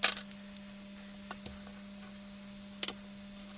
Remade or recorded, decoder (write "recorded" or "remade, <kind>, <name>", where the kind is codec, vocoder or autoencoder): recorded